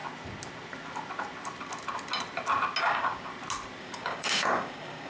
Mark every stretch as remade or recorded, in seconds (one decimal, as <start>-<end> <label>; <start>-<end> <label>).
0.0-2.8 recorded; 2.8-3.3 remade; 3.3-3.8 recorded; 3.8-5.1 remade